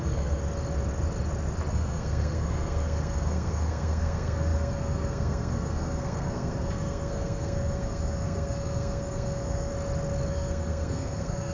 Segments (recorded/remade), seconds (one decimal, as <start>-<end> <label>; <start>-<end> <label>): 0.0-0.4 remade; 0.4-1.7 recorded; 1.7-9.7 remade; 9.7-10.3 recorded; 10.3-11.5 remade